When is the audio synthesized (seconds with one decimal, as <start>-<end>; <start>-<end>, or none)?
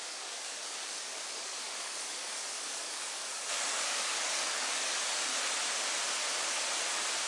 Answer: 0.0-5.3